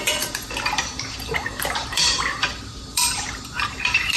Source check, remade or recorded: remade